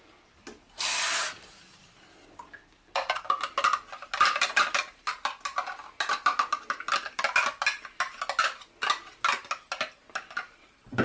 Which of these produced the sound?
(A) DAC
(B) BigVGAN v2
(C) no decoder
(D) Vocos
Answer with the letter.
C